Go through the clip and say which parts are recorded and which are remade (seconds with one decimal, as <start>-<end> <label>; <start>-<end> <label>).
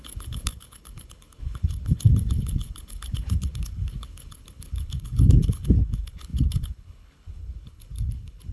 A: 0.0-8.5 remade